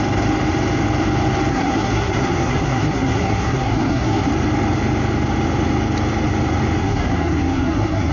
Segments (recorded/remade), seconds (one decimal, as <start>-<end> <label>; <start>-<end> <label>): 0.0-1.5 recorded; 1.5-4.3 remade; 4.3-6.8 recorded; 6.8-8.1 remade